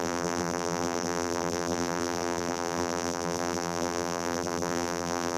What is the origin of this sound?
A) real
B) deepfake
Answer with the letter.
B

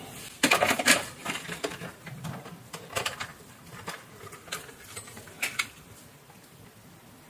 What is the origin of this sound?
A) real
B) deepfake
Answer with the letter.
B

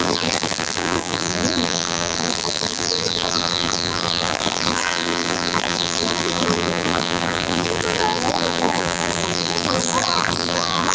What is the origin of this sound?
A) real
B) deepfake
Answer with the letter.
B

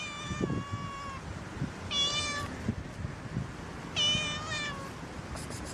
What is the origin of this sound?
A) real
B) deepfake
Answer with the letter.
A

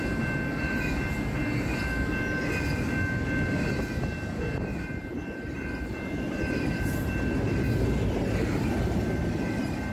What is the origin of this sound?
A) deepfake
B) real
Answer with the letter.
B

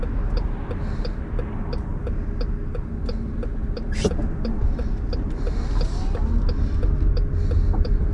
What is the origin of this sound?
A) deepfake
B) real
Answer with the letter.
B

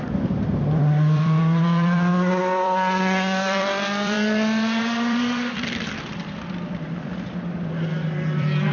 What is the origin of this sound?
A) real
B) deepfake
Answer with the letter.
B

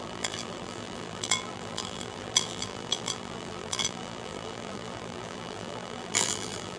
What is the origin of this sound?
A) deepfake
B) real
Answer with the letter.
A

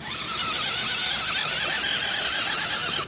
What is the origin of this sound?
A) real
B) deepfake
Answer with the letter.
A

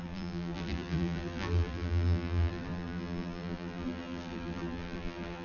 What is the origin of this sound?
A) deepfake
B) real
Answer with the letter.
A